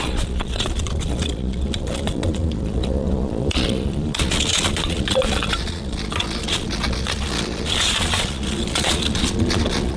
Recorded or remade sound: remade